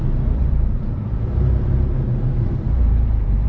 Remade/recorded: remade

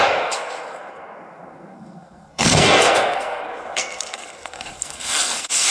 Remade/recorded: remade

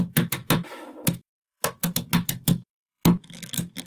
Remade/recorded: remade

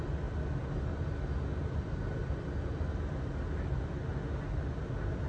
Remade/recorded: recorded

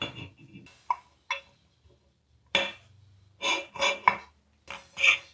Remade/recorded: recorded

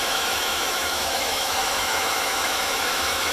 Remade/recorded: remade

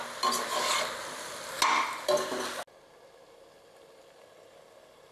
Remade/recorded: recorded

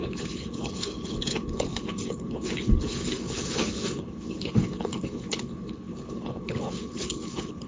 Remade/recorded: remade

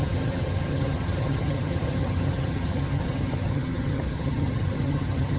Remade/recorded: remade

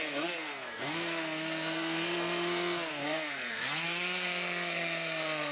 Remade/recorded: remade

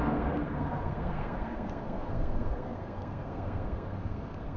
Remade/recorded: remade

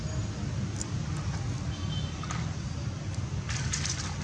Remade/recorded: recorded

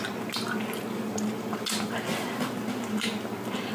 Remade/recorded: recorded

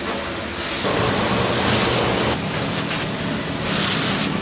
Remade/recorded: recorded